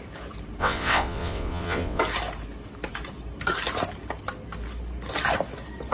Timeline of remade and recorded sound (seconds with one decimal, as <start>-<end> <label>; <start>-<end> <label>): 0.0-0.6 recorded; 0.6-2.0 remade; 2.0-5.9 recorded